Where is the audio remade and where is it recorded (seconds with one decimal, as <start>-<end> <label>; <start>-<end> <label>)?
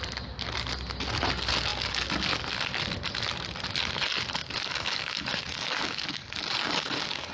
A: 0.0-4.4 recorded; 4.4-7.3 remade